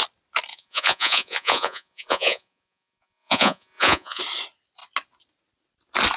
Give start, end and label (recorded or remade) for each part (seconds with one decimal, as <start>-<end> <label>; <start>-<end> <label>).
0.0-0.5 recorded; 0.5-4.2 remade; 4.2-6.2 recorded